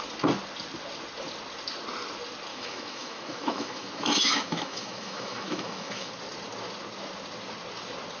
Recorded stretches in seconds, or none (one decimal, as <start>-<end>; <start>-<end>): 0.0-2.5; 6.1-8.2